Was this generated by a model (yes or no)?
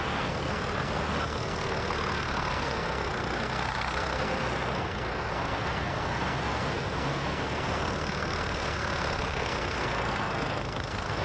yes